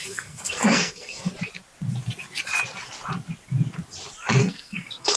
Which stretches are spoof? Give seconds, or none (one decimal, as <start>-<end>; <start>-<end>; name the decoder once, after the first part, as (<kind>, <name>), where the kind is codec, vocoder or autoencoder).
0.0-1.3 (codec, SNAC); 4.4-5.2